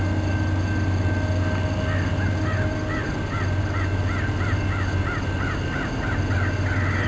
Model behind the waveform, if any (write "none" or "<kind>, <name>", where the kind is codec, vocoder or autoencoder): none